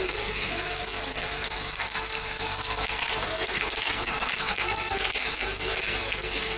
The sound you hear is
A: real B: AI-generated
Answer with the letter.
B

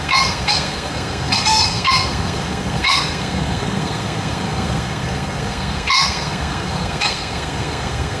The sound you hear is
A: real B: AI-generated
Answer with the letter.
B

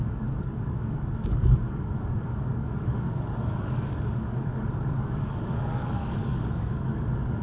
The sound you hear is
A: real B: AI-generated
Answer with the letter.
B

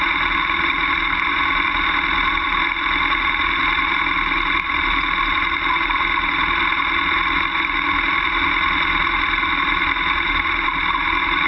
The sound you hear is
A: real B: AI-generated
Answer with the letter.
A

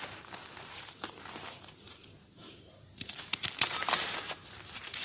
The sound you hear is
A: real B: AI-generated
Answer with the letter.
B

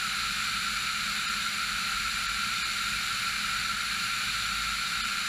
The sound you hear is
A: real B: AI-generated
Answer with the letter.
A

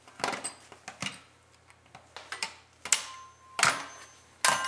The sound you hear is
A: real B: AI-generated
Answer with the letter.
A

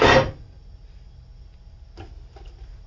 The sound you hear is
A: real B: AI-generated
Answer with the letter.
A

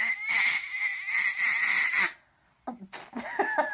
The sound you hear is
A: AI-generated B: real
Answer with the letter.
B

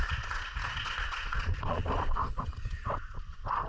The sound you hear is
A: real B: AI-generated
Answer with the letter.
B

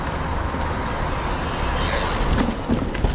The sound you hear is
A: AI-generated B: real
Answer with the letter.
B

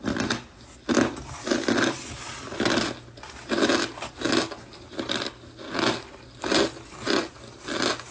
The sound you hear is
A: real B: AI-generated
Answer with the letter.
A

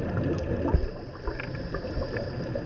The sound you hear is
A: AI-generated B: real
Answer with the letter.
B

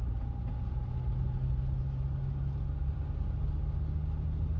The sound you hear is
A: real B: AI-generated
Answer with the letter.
A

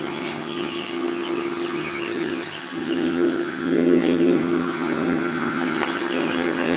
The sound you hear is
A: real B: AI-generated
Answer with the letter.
B